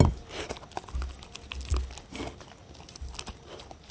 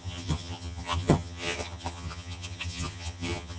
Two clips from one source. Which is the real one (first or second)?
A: first